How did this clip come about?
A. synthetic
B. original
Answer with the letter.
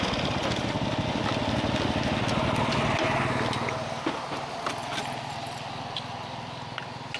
B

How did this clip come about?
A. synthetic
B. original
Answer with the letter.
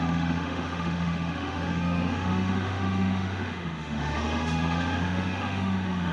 A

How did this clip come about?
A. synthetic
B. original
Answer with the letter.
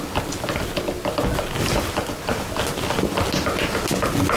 B